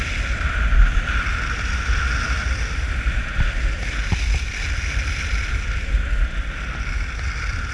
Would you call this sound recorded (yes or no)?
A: yes